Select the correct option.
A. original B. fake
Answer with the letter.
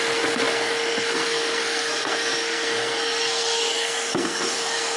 B